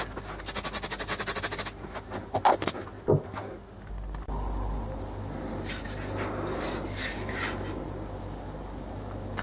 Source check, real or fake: real